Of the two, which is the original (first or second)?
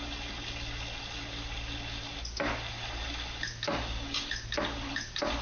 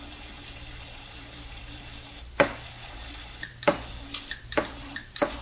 first